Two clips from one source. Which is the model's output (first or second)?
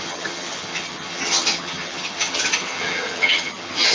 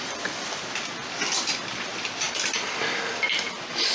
first